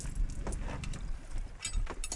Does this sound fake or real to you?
real